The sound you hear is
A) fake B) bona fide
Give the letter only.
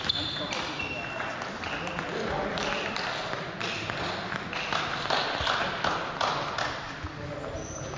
B